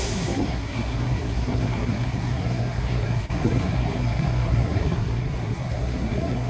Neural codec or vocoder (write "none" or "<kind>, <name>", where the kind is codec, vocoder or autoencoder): codec, SNAC